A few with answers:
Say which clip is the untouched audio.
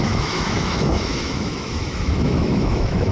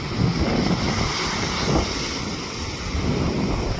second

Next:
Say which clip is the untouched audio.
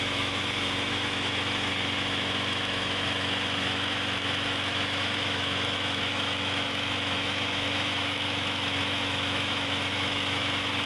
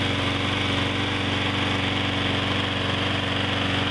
second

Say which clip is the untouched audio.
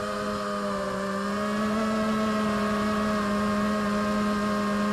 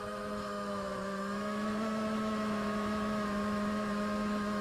first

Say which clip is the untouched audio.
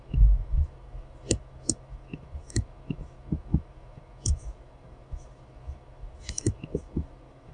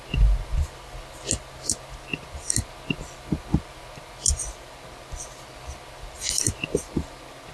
second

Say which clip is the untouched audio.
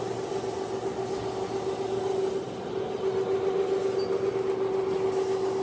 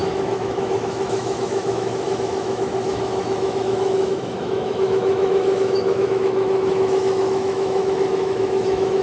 first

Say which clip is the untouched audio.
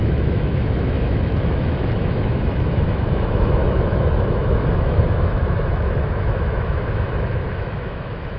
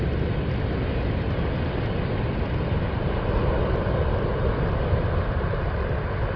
second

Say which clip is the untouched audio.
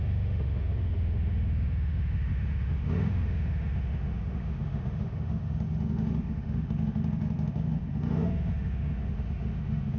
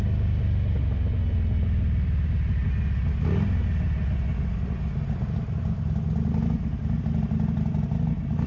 second